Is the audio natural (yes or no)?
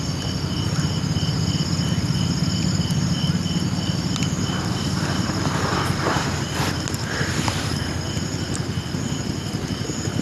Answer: yes